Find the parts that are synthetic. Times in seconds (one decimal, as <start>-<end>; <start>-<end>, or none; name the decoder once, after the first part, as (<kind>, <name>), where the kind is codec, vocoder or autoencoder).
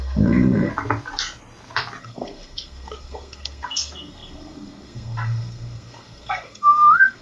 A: 0.0-0.7 (codec, SNAC); 2.0-7.2